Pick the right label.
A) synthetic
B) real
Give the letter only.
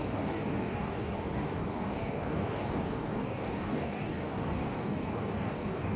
A